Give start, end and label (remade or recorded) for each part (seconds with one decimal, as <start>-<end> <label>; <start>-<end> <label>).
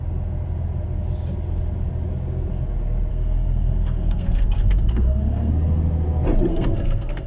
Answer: 0.0-3.1 recorded; 3.1-5.5 remade; 5.5-6.5 recorded; 6.5-7.3 remade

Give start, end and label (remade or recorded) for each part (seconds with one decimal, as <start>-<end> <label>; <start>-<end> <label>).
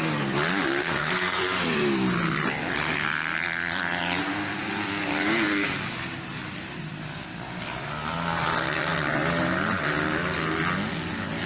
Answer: 0.0-0.8 recorded; 0.8-1.4 remade; 1.4-11.5 recorded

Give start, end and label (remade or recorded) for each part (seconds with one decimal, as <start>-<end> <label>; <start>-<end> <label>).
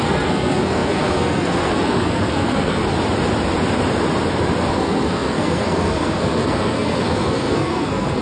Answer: 0.0-2.8 remade; 2.8-4.7 recorded; 4.7-8.2 remade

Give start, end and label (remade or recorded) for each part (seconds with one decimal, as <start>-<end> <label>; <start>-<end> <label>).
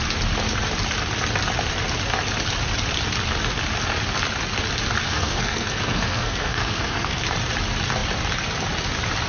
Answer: 0.0-5.0 recorded; 5.0-7.2 remade; 7.2-9.3 recorded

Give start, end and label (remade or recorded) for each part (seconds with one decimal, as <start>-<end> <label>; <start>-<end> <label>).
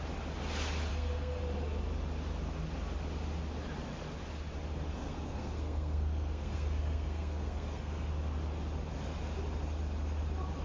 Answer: 0.0-0.9 recorded; 0.9-1.4 remade; 1.4-4.9 recorded; 4.9-8.1 remade; 8.1-10.6 recorded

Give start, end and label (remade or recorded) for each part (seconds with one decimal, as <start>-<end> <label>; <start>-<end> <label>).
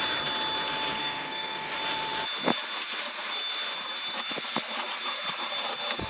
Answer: 0.0-1.0 recorded; 1.0-1.7 remade; 1.7-6.1 recorded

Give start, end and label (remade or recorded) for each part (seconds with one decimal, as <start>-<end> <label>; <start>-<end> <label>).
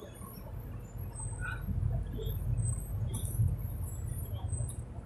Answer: 0.0-5.1 recorded